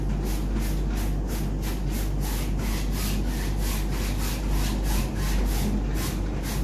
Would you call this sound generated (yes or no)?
no